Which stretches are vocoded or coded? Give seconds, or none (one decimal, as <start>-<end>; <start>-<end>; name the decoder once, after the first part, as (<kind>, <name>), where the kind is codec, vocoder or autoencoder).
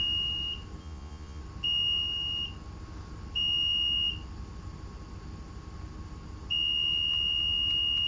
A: 0.8-1.4 (vocoder, Vocos)